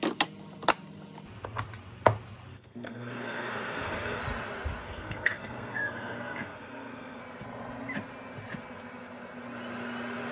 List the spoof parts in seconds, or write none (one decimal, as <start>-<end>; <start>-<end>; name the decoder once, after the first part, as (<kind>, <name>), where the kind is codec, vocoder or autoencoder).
2.5-4.2 (codec, SNAC); 4.8-7.2

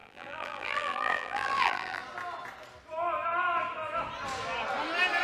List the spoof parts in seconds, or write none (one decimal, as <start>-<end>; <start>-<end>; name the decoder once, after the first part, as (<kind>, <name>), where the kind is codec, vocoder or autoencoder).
0.0-2.0 (vocoder, BigVGAN v2)

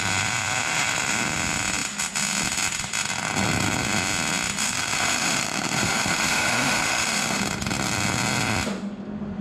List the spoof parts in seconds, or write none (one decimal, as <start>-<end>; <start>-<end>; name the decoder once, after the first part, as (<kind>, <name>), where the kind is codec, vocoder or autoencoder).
4.6-7.4 (autoencoder, DAC-VAE)

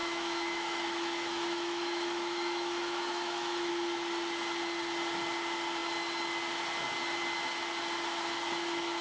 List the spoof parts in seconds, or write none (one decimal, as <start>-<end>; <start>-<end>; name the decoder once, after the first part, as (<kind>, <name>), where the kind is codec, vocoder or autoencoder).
0.0-3.7 (autoencoder, DAC-VAE)